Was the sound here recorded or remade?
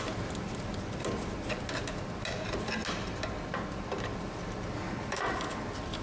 recorded